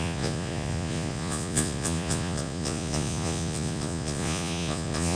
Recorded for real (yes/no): no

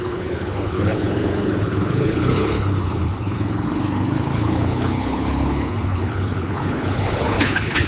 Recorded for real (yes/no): no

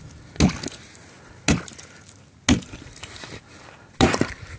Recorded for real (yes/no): yes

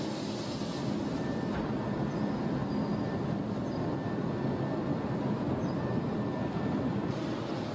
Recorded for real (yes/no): yes